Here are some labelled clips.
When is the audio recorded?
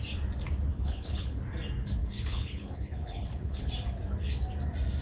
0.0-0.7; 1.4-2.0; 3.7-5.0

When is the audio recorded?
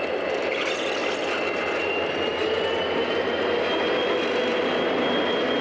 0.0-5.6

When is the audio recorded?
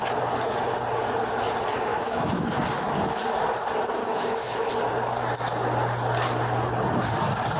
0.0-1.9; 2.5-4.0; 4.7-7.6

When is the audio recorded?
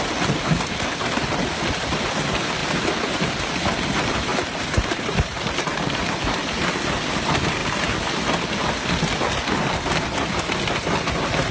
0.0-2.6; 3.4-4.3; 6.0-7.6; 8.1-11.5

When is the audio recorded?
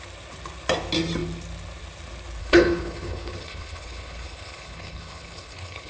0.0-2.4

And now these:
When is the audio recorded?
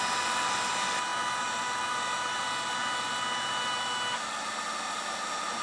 0.0-5.6